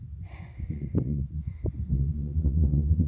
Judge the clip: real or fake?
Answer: fake